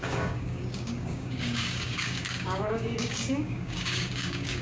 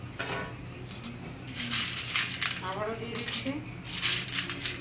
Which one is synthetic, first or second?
first